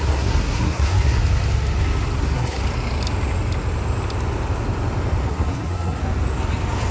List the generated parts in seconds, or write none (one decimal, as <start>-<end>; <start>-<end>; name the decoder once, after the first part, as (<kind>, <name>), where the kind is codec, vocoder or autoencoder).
0.0-1.2 (codec, SNAC); 2.2-2.6; 5.3-6.0